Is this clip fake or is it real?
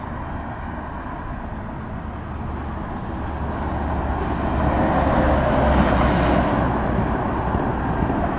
real